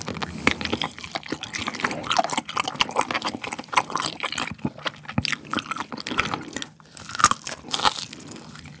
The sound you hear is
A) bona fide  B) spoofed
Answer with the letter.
A